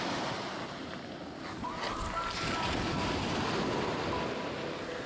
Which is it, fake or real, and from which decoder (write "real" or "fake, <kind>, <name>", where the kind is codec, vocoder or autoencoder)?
real